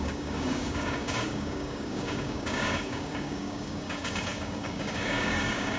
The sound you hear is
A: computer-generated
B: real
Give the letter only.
A